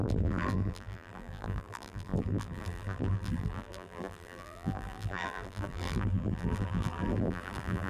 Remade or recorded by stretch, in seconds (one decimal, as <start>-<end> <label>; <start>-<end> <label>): 0.0-7.9 remade